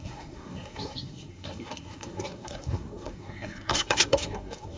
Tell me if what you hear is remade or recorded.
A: remade